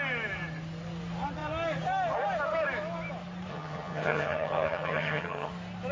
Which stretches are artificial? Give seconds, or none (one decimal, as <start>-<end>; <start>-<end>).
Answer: 3.5-5.5